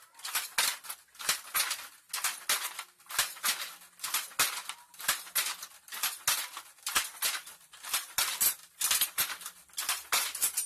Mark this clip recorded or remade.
recorded